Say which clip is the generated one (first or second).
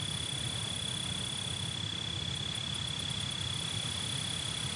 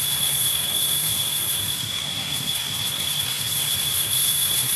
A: second